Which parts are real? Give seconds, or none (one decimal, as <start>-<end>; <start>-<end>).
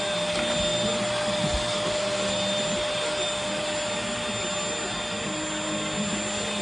0.0-6.6